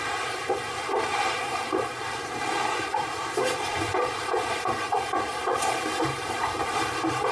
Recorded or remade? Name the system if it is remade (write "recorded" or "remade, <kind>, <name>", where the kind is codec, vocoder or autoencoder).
remade, vocoder, BigVGAN v2